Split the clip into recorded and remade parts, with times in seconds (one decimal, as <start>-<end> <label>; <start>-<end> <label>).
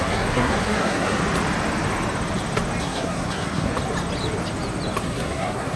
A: 0.0-1.2 remade; 1.2-2.8 recorded; 2.8-3.7 remade; 3.7-5.0 recorded; 5.0-5.8 remade